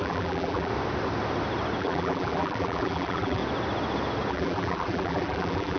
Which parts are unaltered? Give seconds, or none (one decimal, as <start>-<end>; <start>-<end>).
0.7-1.8; 3.4-4.3